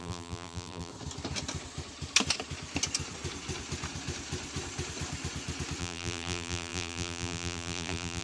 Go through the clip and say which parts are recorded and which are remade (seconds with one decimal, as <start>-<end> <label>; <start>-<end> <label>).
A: 0.0-0.9 remade; 0.9-5.8 recorded; 5.8-8.2 remade